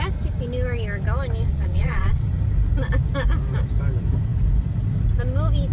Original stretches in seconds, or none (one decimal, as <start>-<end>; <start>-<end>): 0.0-1.5; 2.2-5.7

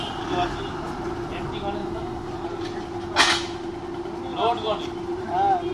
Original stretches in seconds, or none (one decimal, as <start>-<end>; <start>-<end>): 0.0-1.8; 2.3-5.7

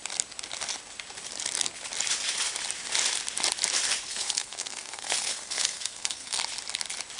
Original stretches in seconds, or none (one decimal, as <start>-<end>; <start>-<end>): 0.0-4.1; 6.4-7.2

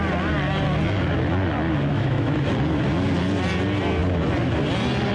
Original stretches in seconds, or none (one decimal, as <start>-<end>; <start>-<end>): 0.0-1.9; 2.5-5.1

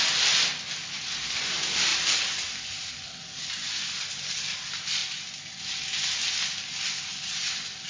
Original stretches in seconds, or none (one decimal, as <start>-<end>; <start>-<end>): 0.0-7.1

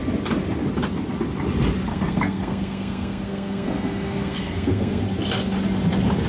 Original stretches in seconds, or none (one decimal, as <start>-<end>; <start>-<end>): 0.0-1.9; 5.0-6.3